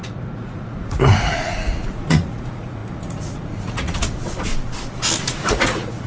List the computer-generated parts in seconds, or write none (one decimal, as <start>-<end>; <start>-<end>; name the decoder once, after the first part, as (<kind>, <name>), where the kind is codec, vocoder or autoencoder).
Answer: 0.0-4.5 (vocoder, Vocos); 5.2-6.1